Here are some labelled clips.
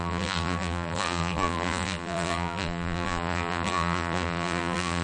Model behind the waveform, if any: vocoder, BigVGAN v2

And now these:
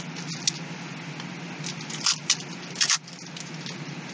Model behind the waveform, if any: none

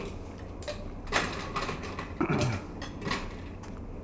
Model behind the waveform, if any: none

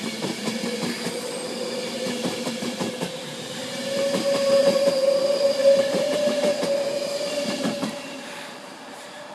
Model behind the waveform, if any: vocoder, BigVGAN v2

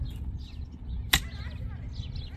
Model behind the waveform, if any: none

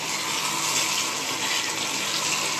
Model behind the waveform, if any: none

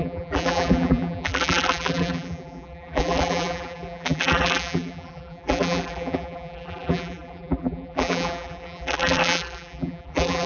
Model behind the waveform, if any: vocoder, BigVGAN v2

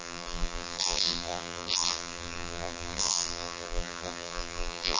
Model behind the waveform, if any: vocoder, BigVGAN v2